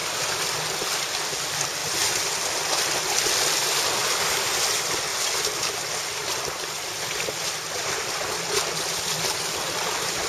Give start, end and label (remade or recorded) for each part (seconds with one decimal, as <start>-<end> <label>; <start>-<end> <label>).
0.0-1.0 recorded; 1.0-10.3 remade